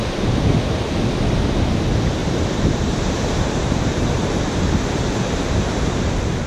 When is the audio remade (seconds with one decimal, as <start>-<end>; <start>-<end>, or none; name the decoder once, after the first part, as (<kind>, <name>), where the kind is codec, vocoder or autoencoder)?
2.2-6.1 (vocoder, BigVGAN v2)